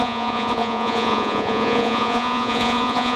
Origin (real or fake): fake